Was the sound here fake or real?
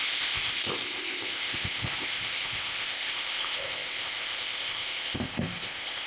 fake